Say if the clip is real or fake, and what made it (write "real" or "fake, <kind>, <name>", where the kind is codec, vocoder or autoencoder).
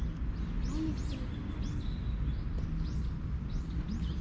real